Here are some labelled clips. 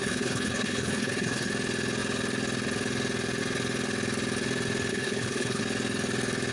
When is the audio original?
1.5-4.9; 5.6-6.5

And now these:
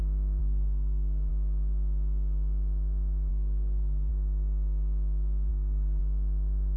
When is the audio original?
0.0-0.4; 1.3-3.3; 4.1-5.5; 6.0-6.8

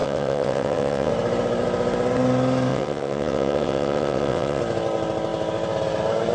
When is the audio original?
1.1-2.7; 4.6-6.3

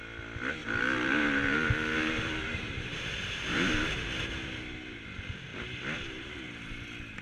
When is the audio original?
0.0-0.6; 4.3-7.2

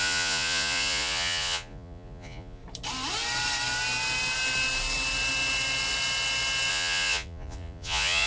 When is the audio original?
2.6-6.7

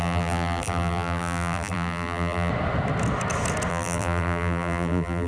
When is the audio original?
2.5-3.7

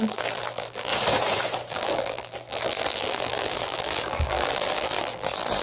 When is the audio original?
0.9-1.7

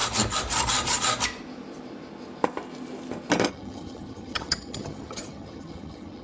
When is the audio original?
0.0-3.5